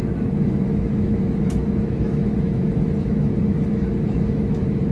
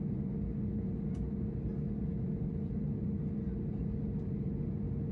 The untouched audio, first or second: second